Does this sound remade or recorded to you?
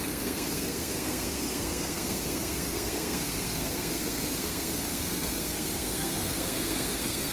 remade